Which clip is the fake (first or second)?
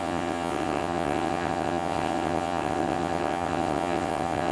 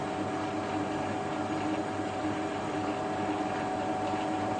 first